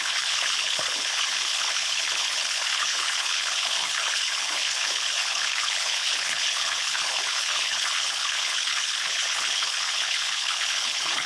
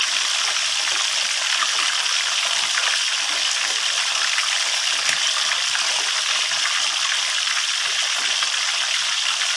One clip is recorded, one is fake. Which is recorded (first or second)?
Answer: second